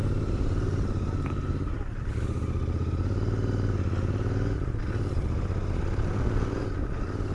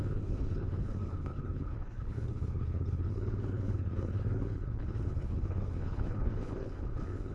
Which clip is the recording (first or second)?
first